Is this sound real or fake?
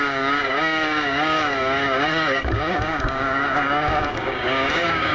fake